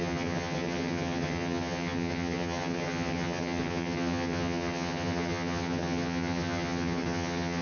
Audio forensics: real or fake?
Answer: fake